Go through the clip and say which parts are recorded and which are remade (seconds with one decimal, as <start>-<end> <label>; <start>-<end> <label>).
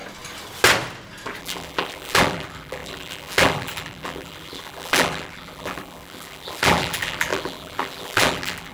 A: 0.0-1.4 recorded; 1.4-8.7 remade